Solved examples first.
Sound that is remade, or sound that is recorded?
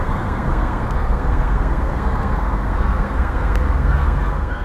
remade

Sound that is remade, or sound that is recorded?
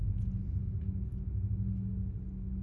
recorded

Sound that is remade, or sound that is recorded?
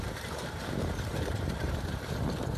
remade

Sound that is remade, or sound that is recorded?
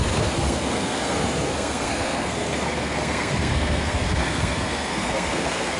remade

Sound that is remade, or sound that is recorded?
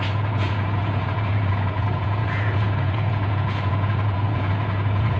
remade